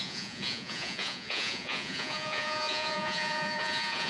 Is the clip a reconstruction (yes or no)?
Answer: yes